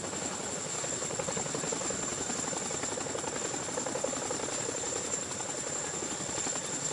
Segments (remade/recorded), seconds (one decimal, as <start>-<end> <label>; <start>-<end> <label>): 0.0-6.9 recorded